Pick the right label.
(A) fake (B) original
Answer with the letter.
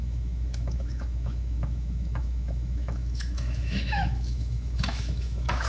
A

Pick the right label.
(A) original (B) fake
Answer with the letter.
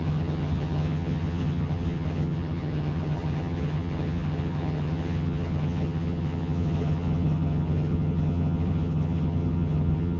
B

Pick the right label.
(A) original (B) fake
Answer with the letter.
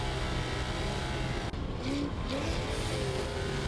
A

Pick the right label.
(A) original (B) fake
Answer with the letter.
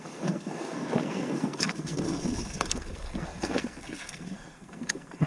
B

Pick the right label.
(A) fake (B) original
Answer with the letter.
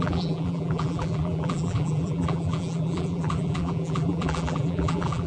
A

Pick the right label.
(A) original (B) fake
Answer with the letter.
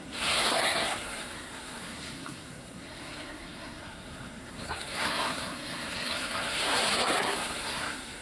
B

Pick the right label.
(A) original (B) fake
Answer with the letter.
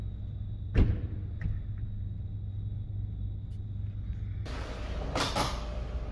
A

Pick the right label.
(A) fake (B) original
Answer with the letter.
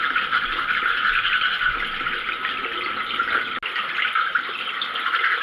B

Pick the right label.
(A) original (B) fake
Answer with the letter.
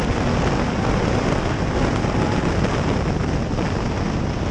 A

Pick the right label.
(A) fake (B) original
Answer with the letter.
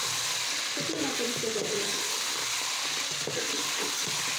B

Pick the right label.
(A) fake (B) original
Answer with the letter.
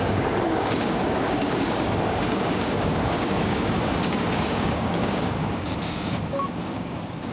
A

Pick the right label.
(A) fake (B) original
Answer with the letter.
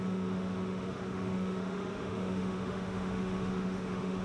A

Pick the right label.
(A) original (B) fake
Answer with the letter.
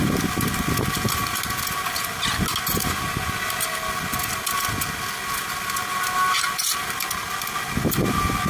A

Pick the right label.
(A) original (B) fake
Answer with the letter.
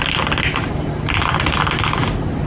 A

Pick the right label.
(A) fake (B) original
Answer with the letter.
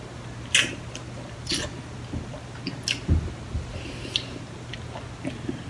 B